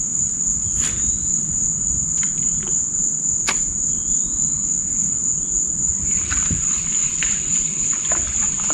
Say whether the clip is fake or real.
real